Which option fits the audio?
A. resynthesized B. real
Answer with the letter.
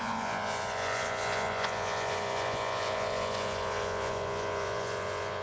A